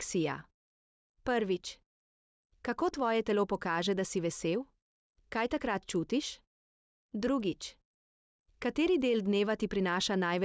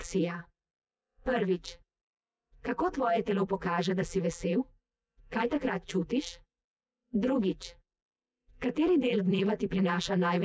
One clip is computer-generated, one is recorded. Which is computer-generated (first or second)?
second